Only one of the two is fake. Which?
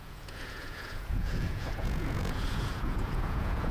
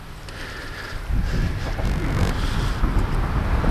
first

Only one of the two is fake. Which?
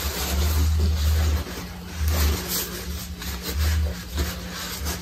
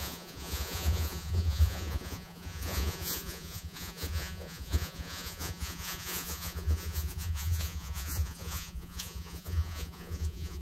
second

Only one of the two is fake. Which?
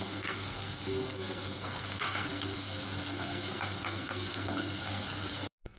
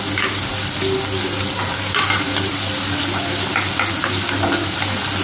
first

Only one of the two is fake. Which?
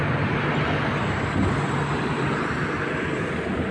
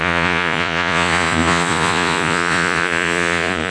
second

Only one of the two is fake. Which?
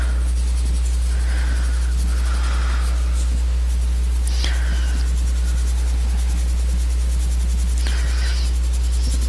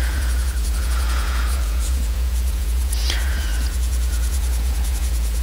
second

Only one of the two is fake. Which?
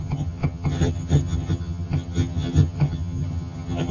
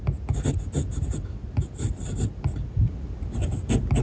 first